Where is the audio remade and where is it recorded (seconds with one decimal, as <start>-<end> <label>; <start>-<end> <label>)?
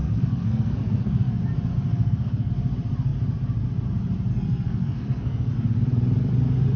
0.0-1.4 remade; 1.4-1.9 recorded; 1.9-2.5 remade; 2.5-4.3 recorded; 4.3-5.5 remade; 5.5-6.8 recorded